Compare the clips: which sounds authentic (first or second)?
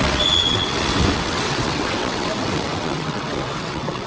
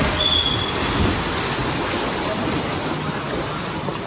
second